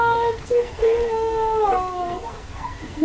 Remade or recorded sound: remade